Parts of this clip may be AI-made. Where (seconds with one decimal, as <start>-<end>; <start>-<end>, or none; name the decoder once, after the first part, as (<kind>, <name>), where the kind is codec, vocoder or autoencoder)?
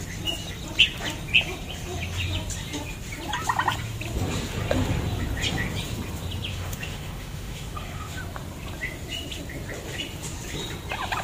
6.5-8.2 (autoencoder, DAC-VAE)